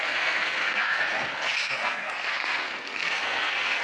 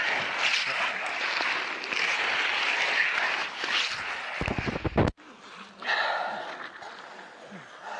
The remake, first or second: first